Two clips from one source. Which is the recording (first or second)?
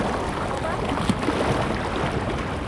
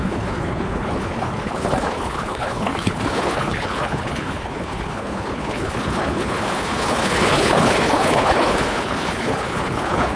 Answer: first